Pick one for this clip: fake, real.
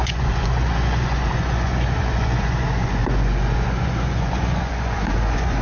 fake